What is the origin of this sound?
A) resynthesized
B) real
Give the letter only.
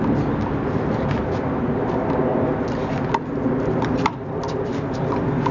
B